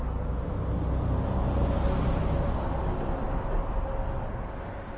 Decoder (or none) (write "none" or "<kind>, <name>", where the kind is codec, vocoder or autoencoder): none